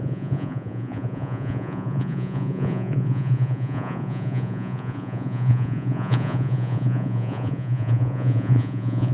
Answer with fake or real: fake